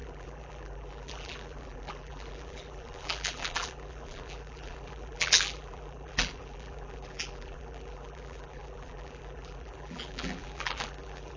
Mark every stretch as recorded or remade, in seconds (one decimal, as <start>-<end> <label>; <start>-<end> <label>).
0.0-11.4 remade

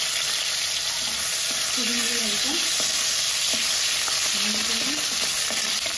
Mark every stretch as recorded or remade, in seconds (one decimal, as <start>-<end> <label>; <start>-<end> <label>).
0.0-6.0 recorded

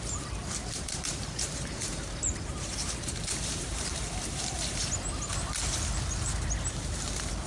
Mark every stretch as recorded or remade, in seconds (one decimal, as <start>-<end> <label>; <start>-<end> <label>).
0.0-0.6 recorded; 0.6-5.1 remade; 5.1-7.5 recorded

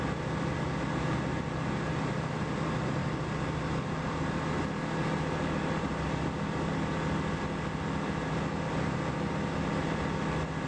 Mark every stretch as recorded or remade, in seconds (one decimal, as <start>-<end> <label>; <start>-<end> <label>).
0.0-10.7 recorded

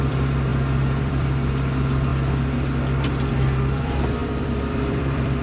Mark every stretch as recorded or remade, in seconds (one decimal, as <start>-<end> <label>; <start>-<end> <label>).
0.0-0.5 remade; 0.5-1.0 recorded; 1.0-2.1 remade; 2.1-3.3 recorded; 3.3-5.4 remade

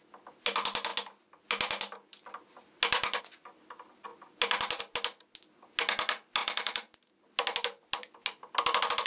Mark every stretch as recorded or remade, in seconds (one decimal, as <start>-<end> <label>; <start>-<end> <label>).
0.0-6.4 recorded; 6.4-7.2 remade; 7.2-9.1 recorded